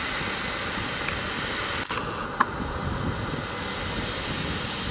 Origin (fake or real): real